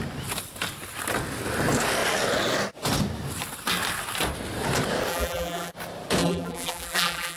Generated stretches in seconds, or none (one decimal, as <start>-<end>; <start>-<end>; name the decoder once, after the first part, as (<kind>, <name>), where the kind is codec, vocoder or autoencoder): 5.1-5.7 (vocoder, BigVGAN v2); 6.2-7.4